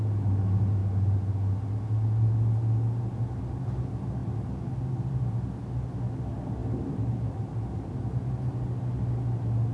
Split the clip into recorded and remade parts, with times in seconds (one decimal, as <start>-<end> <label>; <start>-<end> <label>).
0.0-9.7 recorded